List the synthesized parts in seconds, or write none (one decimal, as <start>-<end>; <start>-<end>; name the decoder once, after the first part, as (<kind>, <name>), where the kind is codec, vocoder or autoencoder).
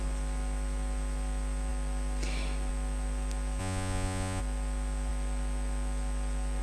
3.6-4.4 (vocoder, Vocos)